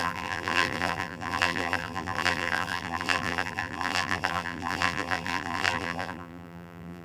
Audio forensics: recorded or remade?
remade